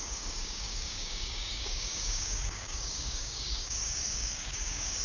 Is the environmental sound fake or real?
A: fake